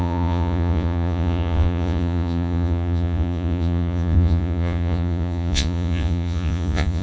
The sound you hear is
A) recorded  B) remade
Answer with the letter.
B